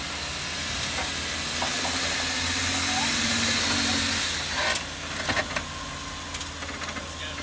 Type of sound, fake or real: real